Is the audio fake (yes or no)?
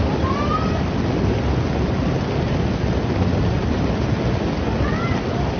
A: no